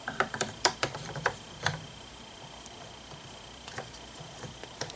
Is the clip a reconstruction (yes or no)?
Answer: yes